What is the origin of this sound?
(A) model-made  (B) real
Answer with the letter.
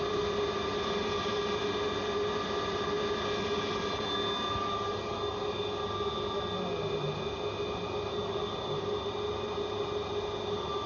B